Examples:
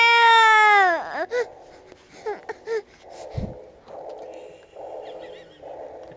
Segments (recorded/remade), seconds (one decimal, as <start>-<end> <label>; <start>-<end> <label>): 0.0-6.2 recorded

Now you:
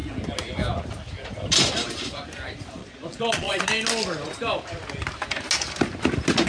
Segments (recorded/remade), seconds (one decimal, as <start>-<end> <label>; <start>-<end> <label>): 0.0-2.8 recorded; 2.8-3.6 remade; 3.6-6.5 recorded

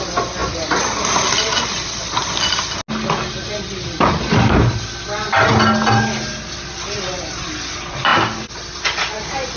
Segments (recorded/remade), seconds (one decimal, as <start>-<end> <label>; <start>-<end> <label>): 0.0-9.6 recorded